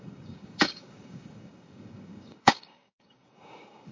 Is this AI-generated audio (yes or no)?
yes